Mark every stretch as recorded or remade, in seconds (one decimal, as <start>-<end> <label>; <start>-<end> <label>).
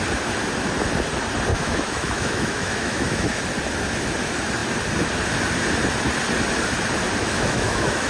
0.0-1.5 recorded; 1.5-3.4 remade; 3.4-7.2 recorded; 7.2-8.1 remade